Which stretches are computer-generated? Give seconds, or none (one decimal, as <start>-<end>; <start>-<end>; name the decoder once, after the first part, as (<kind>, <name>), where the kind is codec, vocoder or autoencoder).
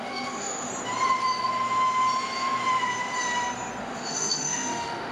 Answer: 0.0-0.7 (autoencoder, DAC-VAE); 3.8-5.1